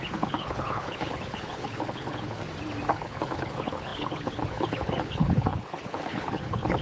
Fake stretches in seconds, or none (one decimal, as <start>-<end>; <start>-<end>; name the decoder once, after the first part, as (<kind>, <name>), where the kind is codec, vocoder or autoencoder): 0.0-2.4 (codec, HILCodec); 2.9-6.8